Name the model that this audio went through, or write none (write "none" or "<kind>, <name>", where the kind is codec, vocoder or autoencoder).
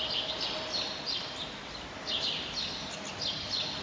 none